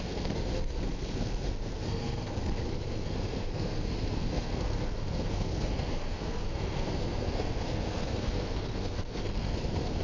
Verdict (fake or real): fake